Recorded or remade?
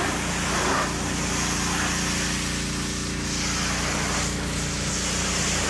recorded